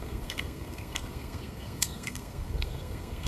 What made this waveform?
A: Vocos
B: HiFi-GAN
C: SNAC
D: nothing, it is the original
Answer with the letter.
C